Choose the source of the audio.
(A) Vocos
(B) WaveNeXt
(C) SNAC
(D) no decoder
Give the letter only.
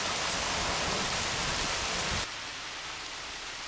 D